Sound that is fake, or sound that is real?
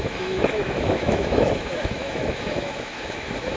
fake